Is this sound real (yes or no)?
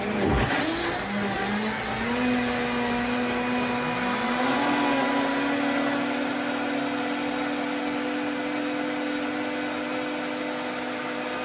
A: yes